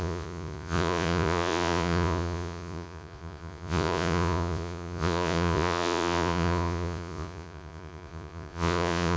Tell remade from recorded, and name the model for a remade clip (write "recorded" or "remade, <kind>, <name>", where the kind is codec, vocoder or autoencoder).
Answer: remade, vocoder, Vocos